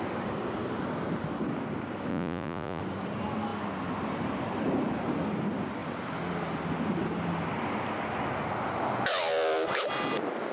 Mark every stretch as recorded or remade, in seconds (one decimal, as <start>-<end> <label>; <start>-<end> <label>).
0.0-2.1 recorded; 2.1-2.8 remade; 2.8-10.5 recorded